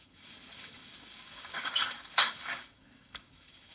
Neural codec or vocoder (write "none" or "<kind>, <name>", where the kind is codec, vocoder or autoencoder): codec, DAC